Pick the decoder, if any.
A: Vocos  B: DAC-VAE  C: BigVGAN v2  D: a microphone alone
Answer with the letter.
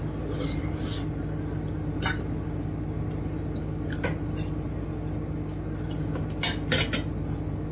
D